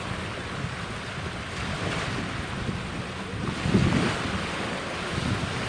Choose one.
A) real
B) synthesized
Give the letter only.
A